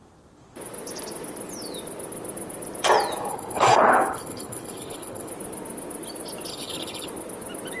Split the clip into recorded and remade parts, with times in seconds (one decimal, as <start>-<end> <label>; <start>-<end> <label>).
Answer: 0.0-3.3 recorded; 3.3-5.3 remade; 5.3-6.5 recorded; 6.5-7.1 remade; 7.1-7.8 recorded